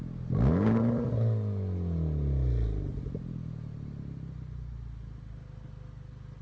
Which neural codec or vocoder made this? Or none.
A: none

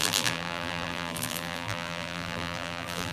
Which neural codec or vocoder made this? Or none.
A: vocoder, BigVGAN v2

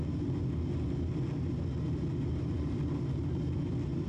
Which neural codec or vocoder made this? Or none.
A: none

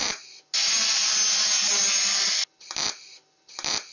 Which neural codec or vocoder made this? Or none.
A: none